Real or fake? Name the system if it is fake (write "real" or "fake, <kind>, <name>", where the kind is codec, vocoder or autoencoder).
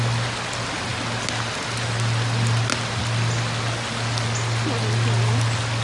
real